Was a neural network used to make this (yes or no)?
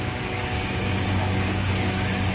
yes